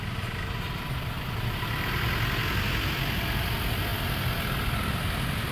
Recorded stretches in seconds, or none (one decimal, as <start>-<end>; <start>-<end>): 0.0-5.5